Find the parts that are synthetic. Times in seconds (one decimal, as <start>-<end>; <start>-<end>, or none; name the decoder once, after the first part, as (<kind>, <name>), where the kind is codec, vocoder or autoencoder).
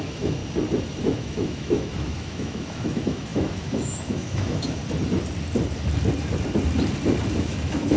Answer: 0.0-0.4 (autoencoder, DAC-VAE); 1.0-4.8; 7.4-8.0